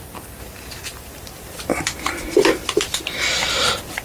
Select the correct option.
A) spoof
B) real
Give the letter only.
A